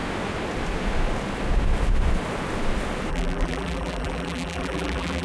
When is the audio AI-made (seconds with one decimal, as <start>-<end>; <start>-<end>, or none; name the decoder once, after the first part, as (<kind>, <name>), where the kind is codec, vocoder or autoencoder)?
3.1-5.2 (vocoder, BigVGAN v2)